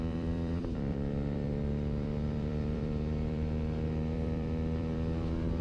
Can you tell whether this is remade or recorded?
remade